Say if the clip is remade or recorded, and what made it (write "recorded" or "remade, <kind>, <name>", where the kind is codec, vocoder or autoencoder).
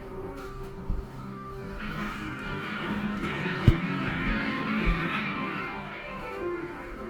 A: remade, codec, DAC